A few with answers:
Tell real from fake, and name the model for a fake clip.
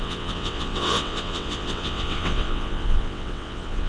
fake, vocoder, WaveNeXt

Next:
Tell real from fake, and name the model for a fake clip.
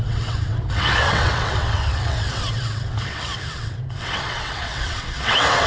fake, vocoder, WaveNeXt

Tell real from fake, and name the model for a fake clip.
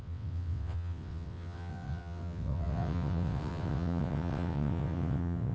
fake, vocoder, WaveNeXt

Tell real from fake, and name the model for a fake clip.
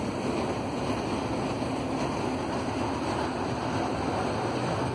real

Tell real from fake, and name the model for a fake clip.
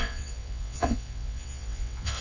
fake, vocoder, WaveNeXt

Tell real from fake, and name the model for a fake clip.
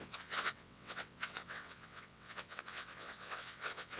fake, vocoder, WaveNeXt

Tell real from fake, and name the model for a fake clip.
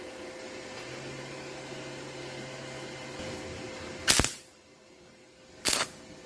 real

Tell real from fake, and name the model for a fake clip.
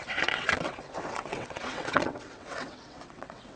fake, vocoder, WaveNeXt